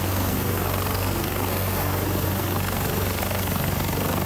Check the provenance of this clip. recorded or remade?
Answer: remade